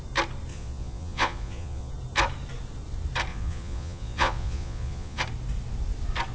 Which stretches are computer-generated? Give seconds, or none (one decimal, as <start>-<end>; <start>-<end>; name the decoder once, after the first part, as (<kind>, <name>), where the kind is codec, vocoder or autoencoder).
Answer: 0.5-1.9 (vocoder, Vocos); 3.3-5.2